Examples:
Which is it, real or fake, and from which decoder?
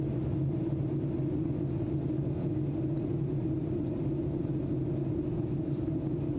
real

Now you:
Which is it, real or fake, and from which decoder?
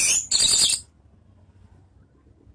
real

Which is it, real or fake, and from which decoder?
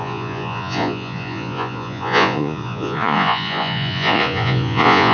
fake, vocoder, Vocos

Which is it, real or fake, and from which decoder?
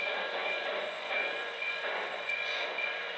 fake, vocoder, Vocos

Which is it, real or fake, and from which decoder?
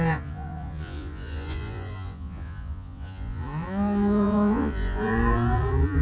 fake, vocoder, Vocos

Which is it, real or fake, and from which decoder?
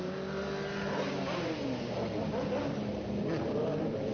real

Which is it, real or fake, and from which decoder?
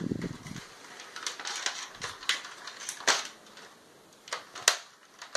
real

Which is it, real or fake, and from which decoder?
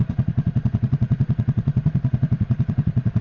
fake, vocoder, Vocos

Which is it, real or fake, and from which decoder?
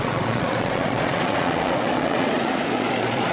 fake, vocoder, Vocos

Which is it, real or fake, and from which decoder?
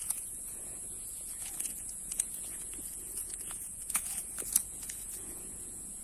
fake, vocoder, Vocos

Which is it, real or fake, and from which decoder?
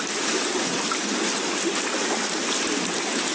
real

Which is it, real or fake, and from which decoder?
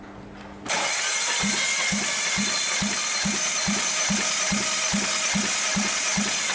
real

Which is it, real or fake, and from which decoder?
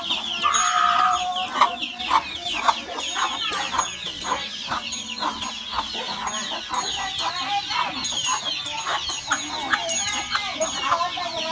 real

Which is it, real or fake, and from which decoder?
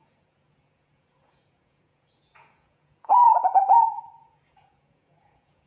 fake, vocoder, Vocos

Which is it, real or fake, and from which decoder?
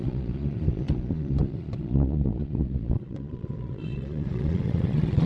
fake, vocoder, Vocos